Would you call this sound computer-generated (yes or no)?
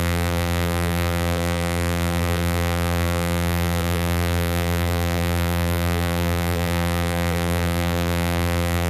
yes